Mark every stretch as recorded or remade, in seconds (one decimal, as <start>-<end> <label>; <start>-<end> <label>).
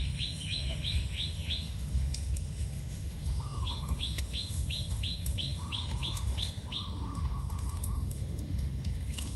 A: 0.0-9.4 remade